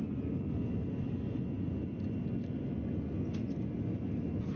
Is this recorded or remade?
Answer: recorded